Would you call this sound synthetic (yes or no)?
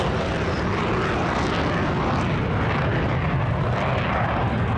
no